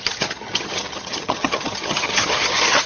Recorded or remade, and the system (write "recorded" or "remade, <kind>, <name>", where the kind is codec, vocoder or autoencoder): remade, vocoder, HiFi-GAN